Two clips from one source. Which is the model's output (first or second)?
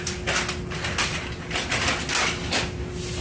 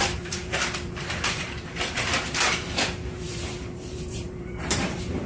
second